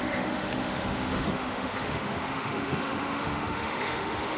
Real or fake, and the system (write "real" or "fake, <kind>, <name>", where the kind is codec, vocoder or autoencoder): fake, autoencoder, DAC-VAE